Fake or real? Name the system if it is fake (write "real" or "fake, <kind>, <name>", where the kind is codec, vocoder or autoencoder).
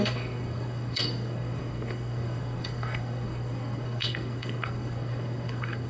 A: fake, codec, SNAC